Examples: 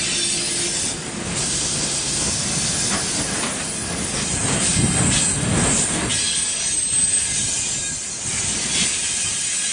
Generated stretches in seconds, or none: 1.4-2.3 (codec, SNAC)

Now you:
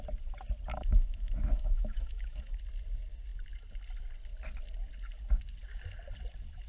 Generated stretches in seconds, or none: 0.7-2.6 (autoencoder, DAC-VAE)

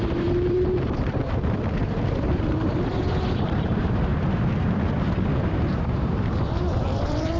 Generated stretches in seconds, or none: 0.0-4.1 (vocoder, BigVGAN v2); 5.5-7.4

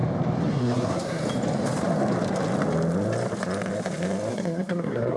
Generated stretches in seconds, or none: 0.5-1.2 (codec, SNAC); 4.3-5.2

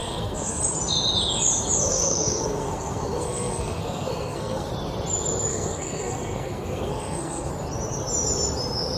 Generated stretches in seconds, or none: 0.0-0.6 (codec, SNAC); 1.9-4.7; 5.5-7.5